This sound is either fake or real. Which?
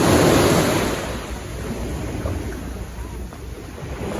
real